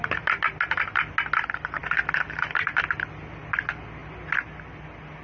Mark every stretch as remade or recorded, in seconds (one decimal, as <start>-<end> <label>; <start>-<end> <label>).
0.0-5.2 recorded